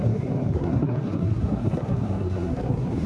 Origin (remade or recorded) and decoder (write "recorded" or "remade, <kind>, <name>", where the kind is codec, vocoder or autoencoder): remade, codec, SNAC